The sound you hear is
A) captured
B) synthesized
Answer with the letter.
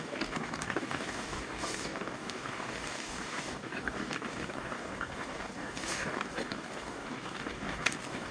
B